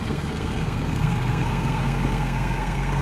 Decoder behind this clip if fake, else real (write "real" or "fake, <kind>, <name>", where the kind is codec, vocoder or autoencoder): fake, codec, SNAC